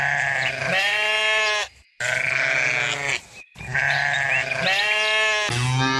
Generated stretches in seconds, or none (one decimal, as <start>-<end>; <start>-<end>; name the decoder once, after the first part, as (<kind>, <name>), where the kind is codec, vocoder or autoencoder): none

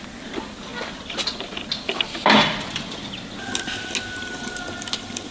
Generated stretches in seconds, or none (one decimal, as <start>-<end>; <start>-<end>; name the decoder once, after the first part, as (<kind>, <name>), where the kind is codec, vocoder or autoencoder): none

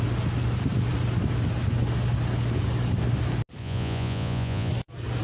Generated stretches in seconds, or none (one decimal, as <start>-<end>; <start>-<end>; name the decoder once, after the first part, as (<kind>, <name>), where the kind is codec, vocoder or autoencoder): 3.6-4.7 (vocoder, Vocos)

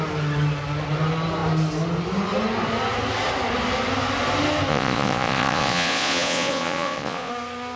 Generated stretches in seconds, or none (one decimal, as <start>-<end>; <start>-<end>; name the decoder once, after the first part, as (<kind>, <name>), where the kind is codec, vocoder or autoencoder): 4.7-7.3 (vocoder, Vocos)

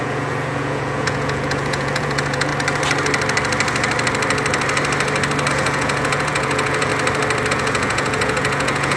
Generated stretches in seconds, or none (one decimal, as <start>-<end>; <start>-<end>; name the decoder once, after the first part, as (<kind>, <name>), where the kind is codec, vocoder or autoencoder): 0.0-2.5 (vocoder, Vocos); 5.5-6.9; 7.5-9.0

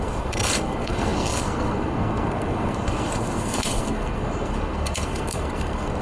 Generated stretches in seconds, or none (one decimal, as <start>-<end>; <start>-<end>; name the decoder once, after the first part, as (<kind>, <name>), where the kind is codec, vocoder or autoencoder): 0.0-6.0 (codec, SNAC)

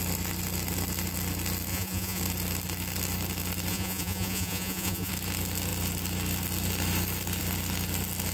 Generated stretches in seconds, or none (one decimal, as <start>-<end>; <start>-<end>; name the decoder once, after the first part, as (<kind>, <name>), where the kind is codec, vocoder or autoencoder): 1.7-2.2 (vocoder, Vocos); 3.7-5.1

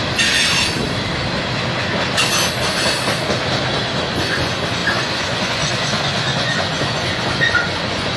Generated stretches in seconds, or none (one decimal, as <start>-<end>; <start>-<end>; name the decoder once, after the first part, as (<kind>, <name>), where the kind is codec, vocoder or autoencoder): 4.1-8.2 (vocoder, Vocos)